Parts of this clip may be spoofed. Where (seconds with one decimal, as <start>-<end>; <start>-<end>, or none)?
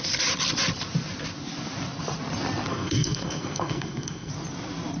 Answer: 2.7-4.3